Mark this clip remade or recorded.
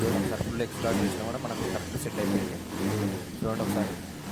recorded